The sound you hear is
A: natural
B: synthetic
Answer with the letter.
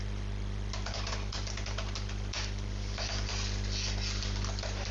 A